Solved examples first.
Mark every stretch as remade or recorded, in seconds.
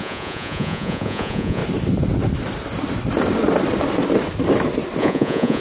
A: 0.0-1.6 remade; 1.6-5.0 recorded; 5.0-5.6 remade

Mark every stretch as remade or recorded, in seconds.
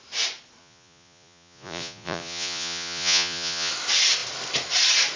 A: 0.0-0.6 recorded; 0.6-3.7 remade; 3.7-5.2 recorded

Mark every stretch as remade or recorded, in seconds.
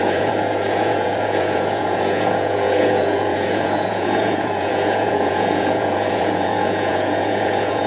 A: 0.0-7.9 remade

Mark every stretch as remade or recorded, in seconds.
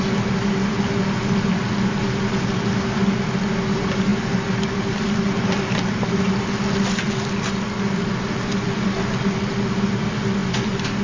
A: 0.0-11.0 recorded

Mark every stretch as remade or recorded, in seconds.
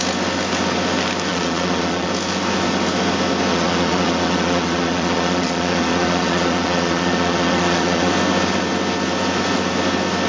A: 0.0-1.3 recorded; 1.3-2.1 remade; 2.1-3.5 recorded; 3.5-8.1 remade; 8.1-10.3 recorded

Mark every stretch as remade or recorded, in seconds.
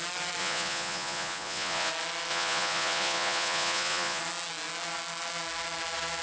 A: 0.0-0.4 recorded; 0.4-1.9 remade; 1.9-2.3 recorded; 2.3-4.2 remade; 4.2-6.2 recorded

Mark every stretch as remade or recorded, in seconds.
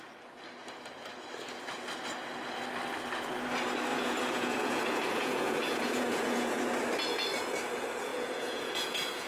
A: 0.0-3.9 recorded; 3.9-6.6 remade; 6.6-8.1 recorded; 8.1-9.3 remade